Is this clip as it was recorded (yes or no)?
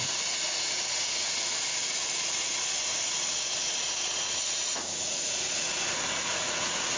no